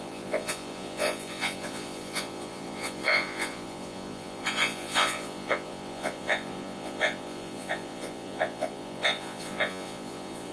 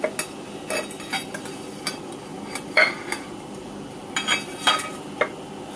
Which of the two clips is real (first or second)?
second